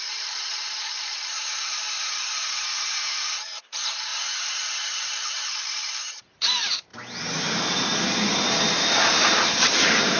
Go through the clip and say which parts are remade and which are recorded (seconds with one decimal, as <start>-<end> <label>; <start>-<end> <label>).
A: 0.0-6.9 remade; 6.9-7.5 recorded; 7.5-7.9 remade; 7.9-8.7 recorded; 8.7-10.2 remade